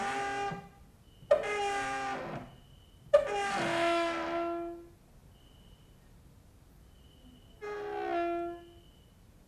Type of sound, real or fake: real